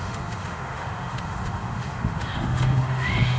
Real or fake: fake